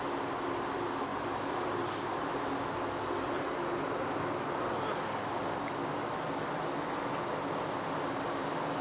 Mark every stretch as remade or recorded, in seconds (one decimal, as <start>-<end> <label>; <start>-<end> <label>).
0.0-8.8 recorded